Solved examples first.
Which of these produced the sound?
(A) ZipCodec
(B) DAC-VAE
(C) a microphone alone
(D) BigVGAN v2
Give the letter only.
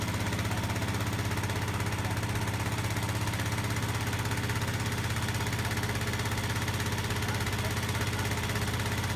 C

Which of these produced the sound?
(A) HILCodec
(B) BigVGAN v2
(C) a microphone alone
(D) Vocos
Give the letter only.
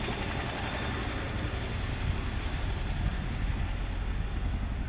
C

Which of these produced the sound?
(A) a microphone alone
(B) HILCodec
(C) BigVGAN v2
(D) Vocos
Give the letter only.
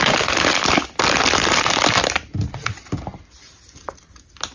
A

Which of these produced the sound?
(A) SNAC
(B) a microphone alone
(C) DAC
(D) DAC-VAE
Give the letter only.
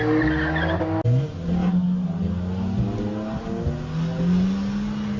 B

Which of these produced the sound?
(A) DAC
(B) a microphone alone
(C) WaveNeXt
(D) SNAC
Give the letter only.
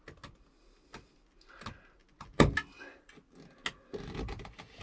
B